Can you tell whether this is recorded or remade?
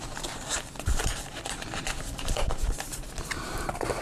remade